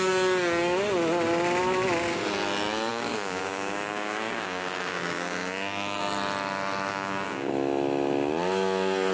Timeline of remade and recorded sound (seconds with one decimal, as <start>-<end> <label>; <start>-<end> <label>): 0.0-2.9 recorded; 2.9-6.0 remade; 6.0-6.9 recorded; 6.9-7.5 remade; 7.5-9.1 recorded